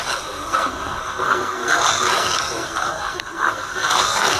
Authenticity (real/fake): fake